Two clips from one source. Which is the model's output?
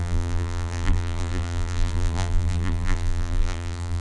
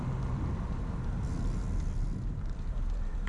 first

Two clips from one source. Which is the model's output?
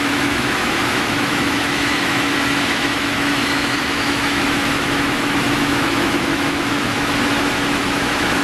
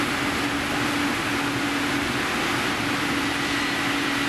first